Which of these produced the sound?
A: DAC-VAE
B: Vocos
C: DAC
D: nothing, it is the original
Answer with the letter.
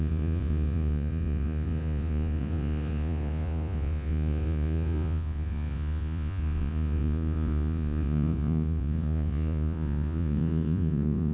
B